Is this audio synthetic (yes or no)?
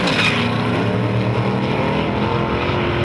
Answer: no